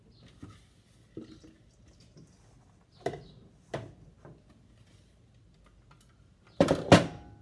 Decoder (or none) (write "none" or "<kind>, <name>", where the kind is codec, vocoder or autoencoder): none